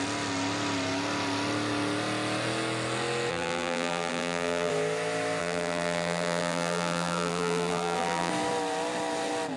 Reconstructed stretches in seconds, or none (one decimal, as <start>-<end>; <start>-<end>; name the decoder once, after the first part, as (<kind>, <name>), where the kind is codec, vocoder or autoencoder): 3.3-4.7 (vocoder, BigVGAN v2); 5.4-8.3